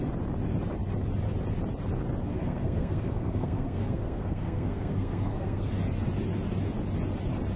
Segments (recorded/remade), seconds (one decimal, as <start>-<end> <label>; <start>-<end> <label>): 0.0-2.3 recorded; 2.3-5.7 remade; 5.7-7.6 recorded